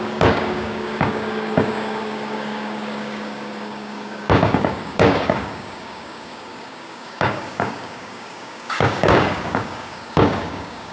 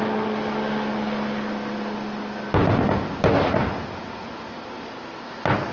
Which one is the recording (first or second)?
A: second